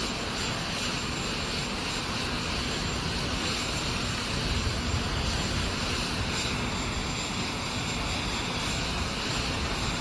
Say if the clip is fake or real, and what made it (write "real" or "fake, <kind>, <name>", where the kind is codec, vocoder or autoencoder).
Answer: real